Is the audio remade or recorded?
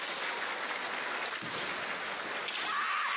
recorded